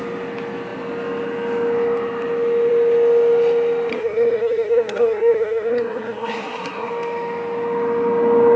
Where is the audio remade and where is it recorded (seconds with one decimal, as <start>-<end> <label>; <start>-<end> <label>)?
0.0-3.9 recorded; 3.9-6.9 remade; 6.9-8.6 recorded

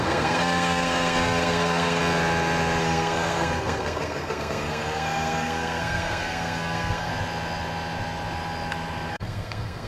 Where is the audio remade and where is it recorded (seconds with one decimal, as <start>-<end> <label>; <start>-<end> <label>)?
0.0-2.0 remade; 2.0-2.8 recorded; 2.8-7.1 remade; 7.1-9.1 recorded; 9.1-9.9 remade